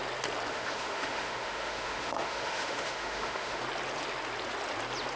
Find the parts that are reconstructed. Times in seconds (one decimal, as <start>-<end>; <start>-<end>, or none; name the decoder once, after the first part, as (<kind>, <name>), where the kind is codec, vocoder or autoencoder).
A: 0.5-3.6 (autoencoder, DAC-VAE)